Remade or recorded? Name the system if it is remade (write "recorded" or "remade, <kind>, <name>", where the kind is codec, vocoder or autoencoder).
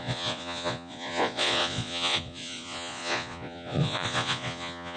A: remade, vocoder, Vocos